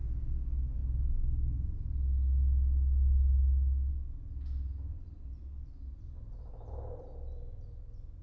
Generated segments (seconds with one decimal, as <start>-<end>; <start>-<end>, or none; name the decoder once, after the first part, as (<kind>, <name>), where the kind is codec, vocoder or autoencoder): none

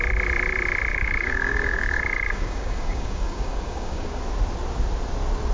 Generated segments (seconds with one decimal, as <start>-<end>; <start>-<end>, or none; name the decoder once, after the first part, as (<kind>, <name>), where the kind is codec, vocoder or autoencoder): 0.9-4.2 (codec, DAC)

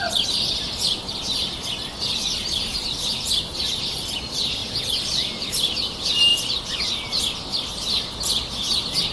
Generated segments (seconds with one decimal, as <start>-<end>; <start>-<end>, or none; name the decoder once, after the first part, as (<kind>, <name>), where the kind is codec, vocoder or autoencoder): none